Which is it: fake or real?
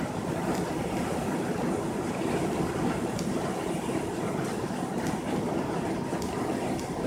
real